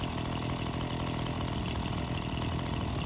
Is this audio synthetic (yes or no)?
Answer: no